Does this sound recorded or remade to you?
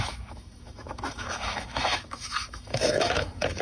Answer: remade